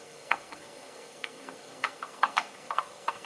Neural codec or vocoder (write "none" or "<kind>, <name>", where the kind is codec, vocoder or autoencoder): codec, SNAC